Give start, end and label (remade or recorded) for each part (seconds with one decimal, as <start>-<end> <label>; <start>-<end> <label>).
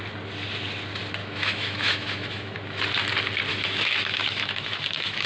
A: 0.0-1.2 recorded; 1.2-2.8 remade; 2.8-3.5 recorded; 3.5-5.3 remade